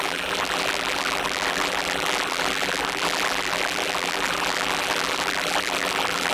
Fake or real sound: fake